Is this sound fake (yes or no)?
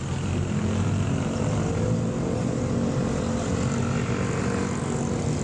no